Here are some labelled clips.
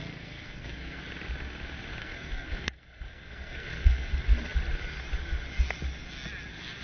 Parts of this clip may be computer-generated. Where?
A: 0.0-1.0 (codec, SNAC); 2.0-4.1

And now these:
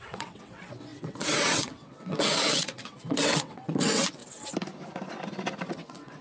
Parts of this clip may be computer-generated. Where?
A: 0.0-4.2 (vocoder, WaveNeXt); 5.7-6.2

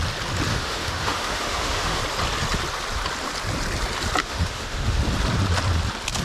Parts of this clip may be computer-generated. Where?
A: 0.5-2.0 (autoencoder, DAC-VAE); 4.2-5.0